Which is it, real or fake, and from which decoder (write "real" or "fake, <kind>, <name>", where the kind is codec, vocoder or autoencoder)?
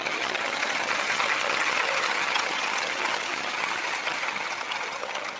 fake, vocoder, HiFi-GAN